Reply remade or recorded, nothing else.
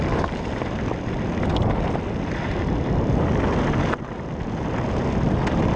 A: recorded